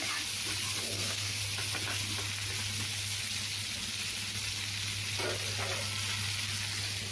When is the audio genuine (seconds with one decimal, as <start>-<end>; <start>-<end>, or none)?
0.0-0.8; 1.4-7.1